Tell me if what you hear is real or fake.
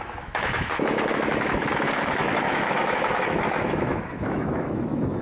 fake